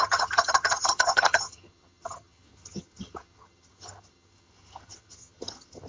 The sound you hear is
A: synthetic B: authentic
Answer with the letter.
A